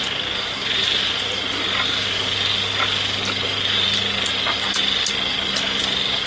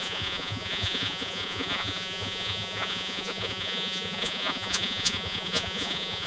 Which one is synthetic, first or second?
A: second